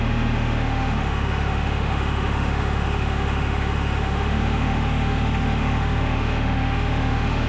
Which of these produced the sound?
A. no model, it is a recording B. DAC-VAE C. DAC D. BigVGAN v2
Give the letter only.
B